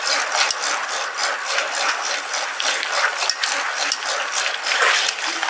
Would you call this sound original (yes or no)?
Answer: yes